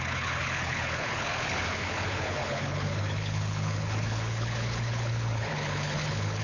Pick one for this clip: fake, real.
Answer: fake